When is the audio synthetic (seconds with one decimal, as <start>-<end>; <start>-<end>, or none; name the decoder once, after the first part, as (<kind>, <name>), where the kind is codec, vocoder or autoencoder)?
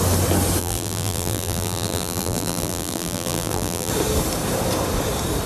0.6-3.9 (vocoder, BigVGAN v2)